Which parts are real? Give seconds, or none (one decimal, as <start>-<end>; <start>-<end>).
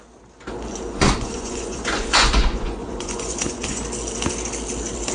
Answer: 0.0-0.7; 3.8-5.1